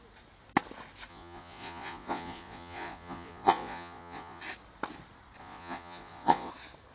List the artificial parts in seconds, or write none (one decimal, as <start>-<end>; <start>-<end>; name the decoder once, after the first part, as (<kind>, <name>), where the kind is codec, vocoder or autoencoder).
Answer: 1.1-4.4 (vocoder, Vocos); 5.4-6.5